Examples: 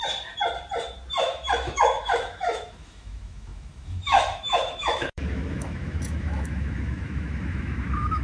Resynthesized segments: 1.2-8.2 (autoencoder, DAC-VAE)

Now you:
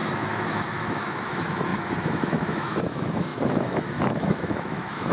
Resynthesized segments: 0.0-5.1 (autoencoder, DAC-VAE)